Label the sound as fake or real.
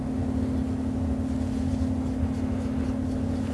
real